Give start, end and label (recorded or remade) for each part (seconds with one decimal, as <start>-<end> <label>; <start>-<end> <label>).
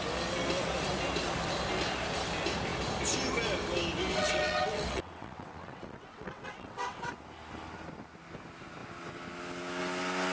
0.0-4.1 recorded; 4.1-7.1 remade; 7.1-10.3 recorded